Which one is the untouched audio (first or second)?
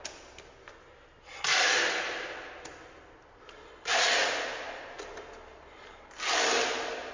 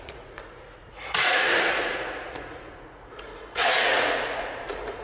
first